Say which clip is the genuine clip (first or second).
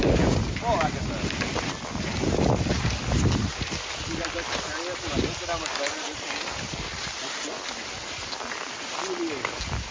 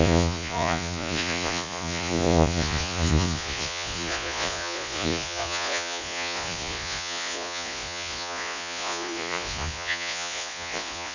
first